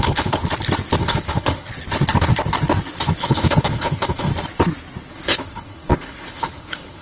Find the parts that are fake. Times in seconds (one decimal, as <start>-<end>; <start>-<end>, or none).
0.0-0.4; 1.0-1.7; 3.2-4.3; 5.1-7.0